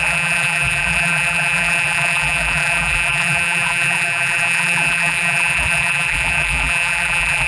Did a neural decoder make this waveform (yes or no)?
yes